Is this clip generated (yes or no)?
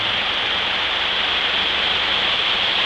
no